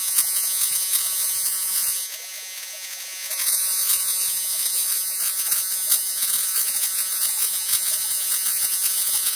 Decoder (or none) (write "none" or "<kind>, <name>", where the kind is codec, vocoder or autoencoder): vocoder, Vocos